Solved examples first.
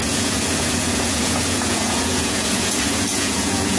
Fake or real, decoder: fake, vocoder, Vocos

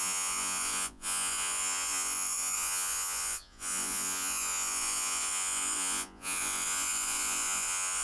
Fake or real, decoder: fake, vocoder, Vocos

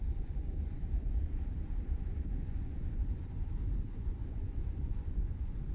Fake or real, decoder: fake, vocoder, Vocos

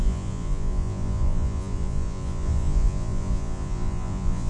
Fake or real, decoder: fake, vocoder, Vocos